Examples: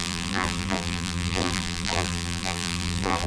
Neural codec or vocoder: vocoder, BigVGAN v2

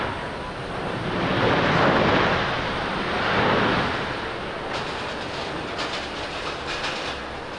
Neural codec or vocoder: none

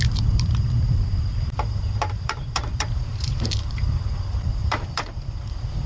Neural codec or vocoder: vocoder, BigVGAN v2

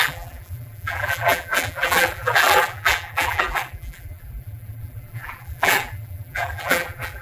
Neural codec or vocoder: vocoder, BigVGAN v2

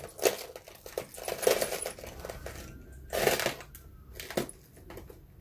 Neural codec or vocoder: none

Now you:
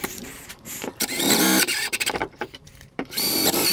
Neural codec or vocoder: vocoder, BigVGAN v2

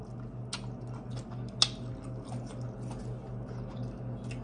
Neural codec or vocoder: none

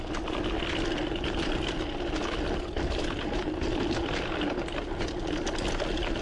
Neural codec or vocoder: none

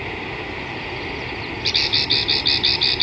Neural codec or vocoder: none